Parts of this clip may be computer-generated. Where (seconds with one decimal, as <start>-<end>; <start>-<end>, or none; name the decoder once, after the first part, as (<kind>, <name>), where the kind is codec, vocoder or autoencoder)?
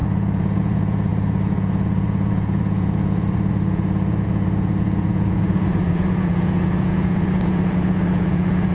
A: 0.0-8.7 (vocoder, Vocos)